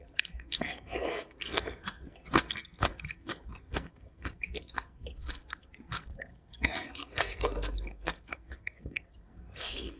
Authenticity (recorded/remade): remade